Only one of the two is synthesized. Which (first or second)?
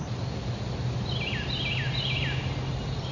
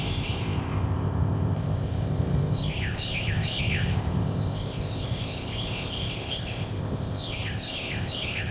second